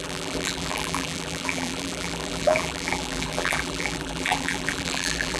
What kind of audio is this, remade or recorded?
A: remade